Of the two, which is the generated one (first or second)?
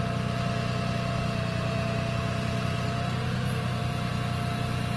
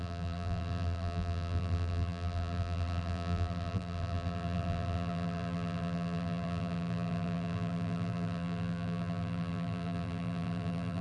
second